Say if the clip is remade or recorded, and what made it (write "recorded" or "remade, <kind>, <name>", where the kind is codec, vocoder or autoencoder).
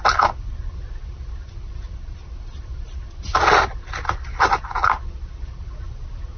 recorded